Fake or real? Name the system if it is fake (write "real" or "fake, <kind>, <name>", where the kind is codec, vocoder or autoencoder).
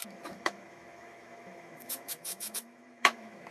fake, autoencoder, DAC-VAE